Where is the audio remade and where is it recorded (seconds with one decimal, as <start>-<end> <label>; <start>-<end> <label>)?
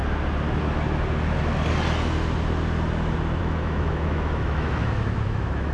0.0-3.4 recorded; 3.4-5.7 remade